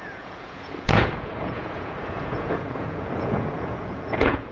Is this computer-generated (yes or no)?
yes